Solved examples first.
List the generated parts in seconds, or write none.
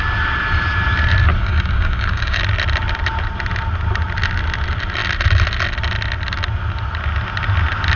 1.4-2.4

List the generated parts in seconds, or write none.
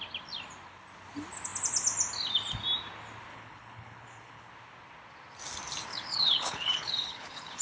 3.3-4.5; 5.9-7.6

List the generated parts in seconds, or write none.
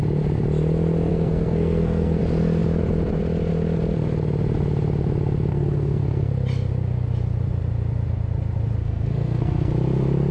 1.1-2.2; 5.5-6.3; 8.8-9.7